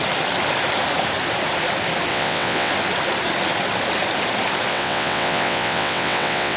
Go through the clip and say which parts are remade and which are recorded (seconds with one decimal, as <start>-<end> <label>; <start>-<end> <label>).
0.0-2.1 recorded; 2.1-2.7 remade; 2.7-4.7 recorded; 4.7-6.6 remade